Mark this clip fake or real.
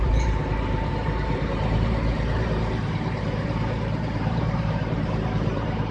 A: fake